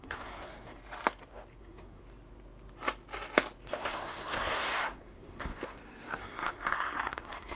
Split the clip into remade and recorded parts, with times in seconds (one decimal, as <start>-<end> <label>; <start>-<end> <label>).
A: 0.0-0.8 remade; 0.8-1.6 recorded; 1.6-2.0 remade; 2.0-3.7 recorded; 3.7-7.6 remade